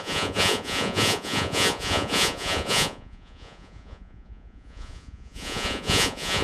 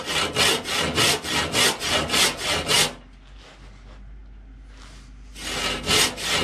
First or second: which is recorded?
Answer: second